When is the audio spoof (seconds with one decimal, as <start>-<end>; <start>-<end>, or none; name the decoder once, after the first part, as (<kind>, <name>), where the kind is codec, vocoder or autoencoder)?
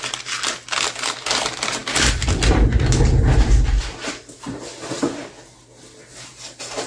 none